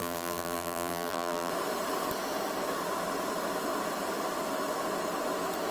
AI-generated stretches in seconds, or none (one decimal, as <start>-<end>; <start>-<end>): 0.0-1.5